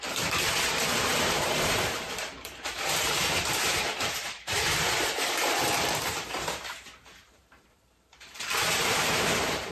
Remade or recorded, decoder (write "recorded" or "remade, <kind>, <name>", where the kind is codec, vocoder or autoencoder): remade, vocoder, BigVGAN v2